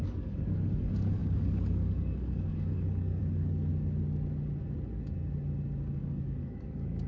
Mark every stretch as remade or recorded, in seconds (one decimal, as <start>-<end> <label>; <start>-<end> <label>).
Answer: 0.0-3.7 remade; 3.7-6.0 recorded; 6.0-7.1 remade